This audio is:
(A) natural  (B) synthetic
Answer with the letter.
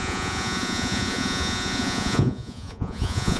B